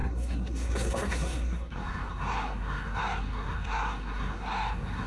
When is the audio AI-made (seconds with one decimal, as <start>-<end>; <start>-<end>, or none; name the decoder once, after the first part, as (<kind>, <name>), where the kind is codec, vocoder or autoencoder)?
0.0-5.1 (codec, SNAC)